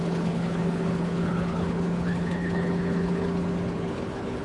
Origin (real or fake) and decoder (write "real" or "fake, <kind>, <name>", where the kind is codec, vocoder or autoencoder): fake, codec, HILCodec